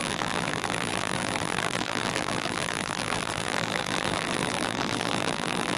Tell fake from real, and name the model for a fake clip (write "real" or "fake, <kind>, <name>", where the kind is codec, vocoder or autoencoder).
fake, vocoder, BigVGAN v2